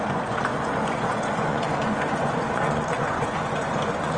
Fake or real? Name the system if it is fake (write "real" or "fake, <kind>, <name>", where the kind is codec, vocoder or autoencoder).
fake, vocoder, Vocos